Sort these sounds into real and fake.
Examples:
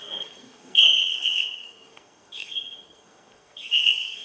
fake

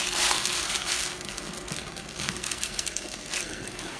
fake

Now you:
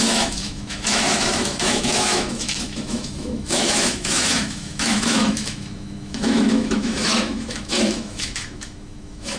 fake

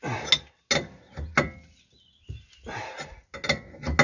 real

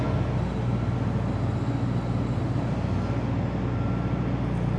real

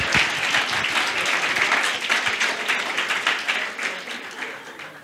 real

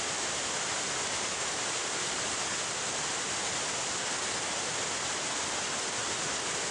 real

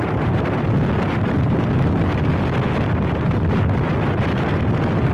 real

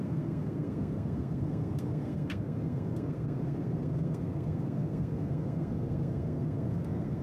fake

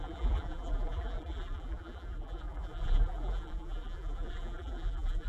fake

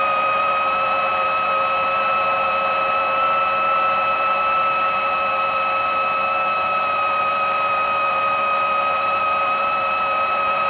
fake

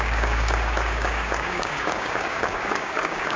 fake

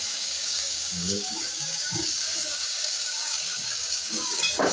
fake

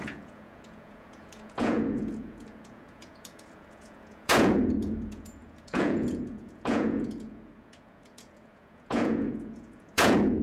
fake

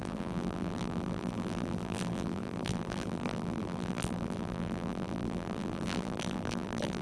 fake